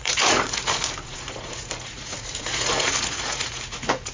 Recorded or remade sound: remade